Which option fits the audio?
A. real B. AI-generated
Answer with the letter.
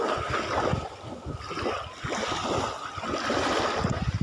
A